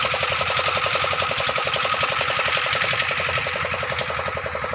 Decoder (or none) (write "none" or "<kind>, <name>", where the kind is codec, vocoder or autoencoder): none